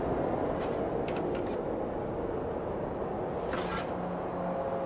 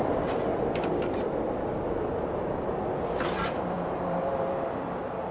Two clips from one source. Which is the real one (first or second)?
first